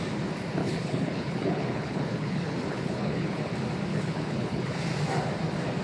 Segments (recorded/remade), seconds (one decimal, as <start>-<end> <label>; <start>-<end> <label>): 0.0-0.6 recorded; 0.6-3.5 remade; 3.5-3.9 recorded; 3.9-4.8 remade; 4.8-5.8 recorded